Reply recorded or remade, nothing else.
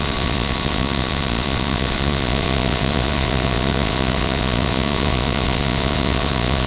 remade